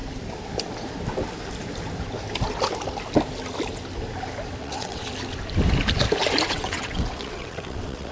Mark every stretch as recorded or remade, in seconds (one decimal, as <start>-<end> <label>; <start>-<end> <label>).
0.0-4.6 recorded; 4.6-5.0 remade; 5.0-6.5 recorded; 6.5-8.1 remade

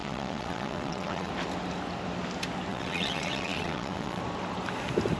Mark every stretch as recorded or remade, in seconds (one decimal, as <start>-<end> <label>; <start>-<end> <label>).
0.0-1.3 remade; 1.3-2.7 recorded; 2.7-4.2 remade; 4.2-5.2 recorded

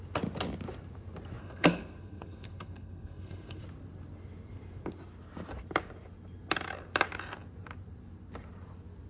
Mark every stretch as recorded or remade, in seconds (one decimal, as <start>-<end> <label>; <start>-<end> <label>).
0.0-1.4 recorded; 1.4-3.6 remade; 3.6-9.1 recorded

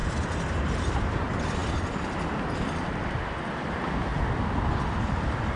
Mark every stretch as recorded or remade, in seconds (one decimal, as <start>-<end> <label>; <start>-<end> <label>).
0.0-5.6 remade